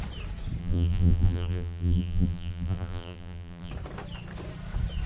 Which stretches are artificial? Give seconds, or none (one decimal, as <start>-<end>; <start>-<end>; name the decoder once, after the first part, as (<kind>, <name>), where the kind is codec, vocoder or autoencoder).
0.6-3.7 (vocoder, BigVGAN v2)